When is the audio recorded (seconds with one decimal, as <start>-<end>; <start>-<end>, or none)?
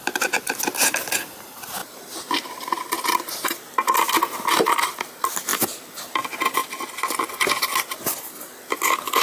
0.0-9.2